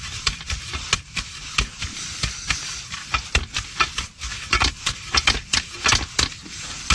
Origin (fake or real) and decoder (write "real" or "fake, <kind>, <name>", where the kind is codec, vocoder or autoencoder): real